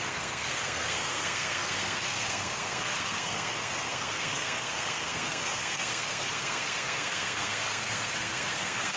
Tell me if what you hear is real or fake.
fake